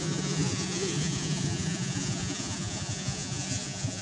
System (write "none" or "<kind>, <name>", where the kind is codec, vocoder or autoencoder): vocoder, Vocos